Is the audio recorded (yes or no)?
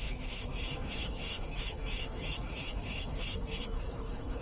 no